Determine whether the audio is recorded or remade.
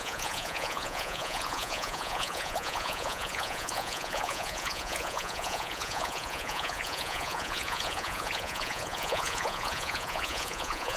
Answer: remade